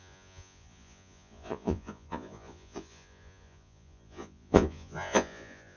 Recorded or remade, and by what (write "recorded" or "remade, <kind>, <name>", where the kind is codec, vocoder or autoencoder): remade, vocoder, Vocos